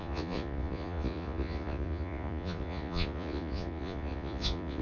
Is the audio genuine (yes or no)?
no